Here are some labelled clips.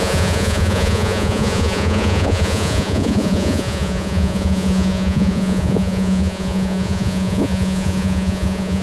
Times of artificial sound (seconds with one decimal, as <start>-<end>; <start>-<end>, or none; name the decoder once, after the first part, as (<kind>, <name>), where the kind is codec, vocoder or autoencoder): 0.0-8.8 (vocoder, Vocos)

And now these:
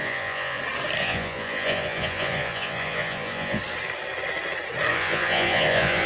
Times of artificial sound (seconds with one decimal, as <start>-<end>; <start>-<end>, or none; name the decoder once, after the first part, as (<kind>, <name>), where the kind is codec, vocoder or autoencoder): 0.0-0.6 (vocoder, Vocos); 1.0-3.6; 4.9-6.1

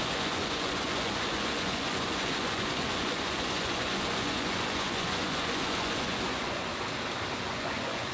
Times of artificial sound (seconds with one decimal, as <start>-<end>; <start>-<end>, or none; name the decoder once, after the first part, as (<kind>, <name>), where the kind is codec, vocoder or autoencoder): 0.0-6.7 (vocoder, Vocos); 7.3-8.1

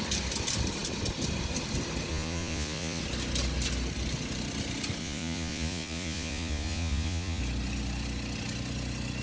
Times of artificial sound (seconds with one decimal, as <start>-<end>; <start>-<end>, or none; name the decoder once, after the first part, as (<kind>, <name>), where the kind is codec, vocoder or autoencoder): 2.1-3.0 (vocoder, Vocos); 5.0-7.4